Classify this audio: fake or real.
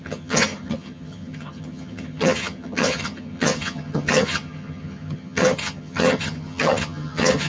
fake